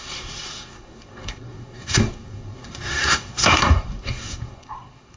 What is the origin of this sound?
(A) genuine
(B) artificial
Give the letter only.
B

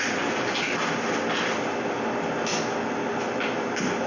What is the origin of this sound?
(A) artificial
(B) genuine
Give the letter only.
B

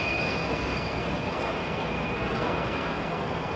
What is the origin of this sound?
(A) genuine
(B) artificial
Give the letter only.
B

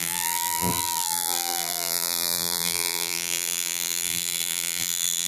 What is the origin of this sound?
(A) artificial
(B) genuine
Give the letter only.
A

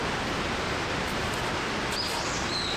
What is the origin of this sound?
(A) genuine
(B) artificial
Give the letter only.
A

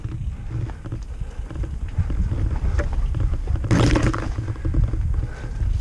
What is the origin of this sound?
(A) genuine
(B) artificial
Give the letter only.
A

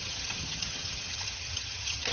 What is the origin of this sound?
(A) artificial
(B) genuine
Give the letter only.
A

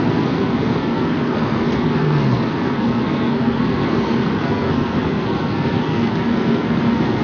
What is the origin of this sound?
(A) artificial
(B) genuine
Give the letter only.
A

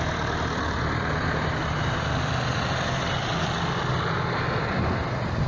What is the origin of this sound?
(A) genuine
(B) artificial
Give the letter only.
A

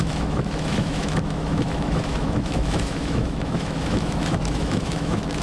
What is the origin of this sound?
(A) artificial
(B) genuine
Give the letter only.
A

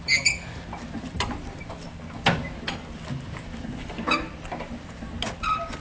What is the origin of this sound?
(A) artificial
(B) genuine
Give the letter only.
B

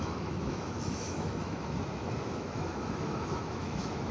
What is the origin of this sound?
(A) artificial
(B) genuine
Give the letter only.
A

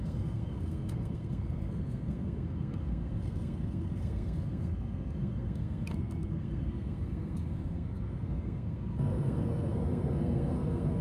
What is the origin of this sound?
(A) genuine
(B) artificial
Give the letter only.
B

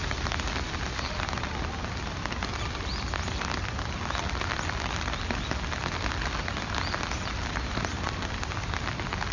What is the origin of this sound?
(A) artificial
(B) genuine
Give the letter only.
B